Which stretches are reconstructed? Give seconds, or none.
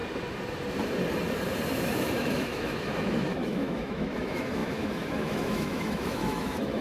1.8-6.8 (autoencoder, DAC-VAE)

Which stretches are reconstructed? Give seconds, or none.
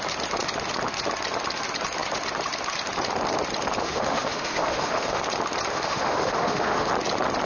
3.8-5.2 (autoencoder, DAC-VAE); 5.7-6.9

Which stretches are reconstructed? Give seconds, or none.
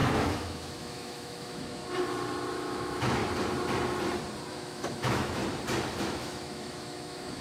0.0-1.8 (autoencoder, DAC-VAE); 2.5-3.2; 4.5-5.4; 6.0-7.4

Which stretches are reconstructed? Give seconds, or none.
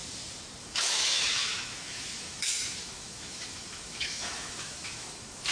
0.6-5.5 (autoencoder, DAC-VAE)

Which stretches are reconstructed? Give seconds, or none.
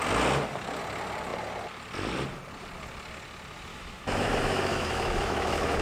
3.7-5.8 (autoencoder, DAC-VAE)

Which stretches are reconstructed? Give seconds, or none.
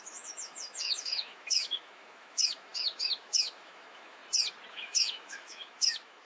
0.0-4.2 (autoencoder, DAC-VAE); 4.7-6.3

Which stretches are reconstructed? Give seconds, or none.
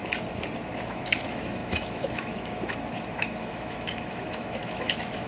0.7-5.3 (autoencoder, DAC-VAE)